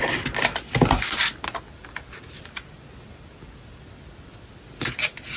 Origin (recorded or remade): recorded